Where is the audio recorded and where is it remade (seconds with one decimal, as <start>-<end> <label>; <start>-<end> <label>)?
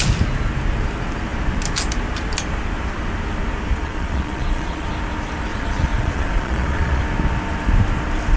0.0-3.7 recorded; 3.7-4.9 remade; 4.9-5.5 recorded; 5.5-7.0 remade; 7.0-8.4 recorded